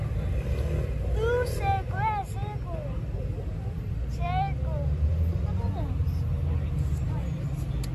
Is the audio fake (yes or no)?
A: no